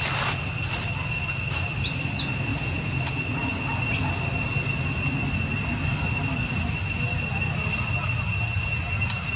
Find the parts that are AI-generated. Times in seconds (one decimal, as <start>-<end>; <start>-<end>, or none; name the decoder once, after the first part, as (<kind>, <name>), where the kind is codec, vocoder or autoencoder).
2.5-3.2 (vocoder, Vocos)